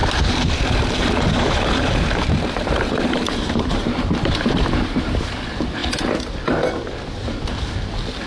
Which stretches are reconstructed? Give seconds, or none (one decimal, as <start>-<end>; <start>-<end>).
0.0-5.0